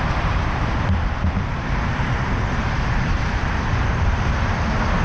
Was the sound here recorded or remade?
remade